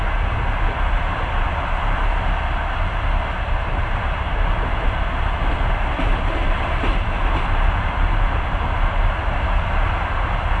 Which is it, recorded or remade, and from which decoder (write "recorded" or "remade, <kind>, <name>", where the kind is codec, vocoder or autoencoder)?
recorded